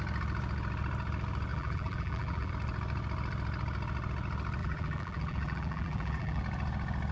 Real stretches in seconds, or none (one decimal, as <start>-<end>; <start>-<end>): 0.0-1.5; 2.5-4.6; 6.4-7.1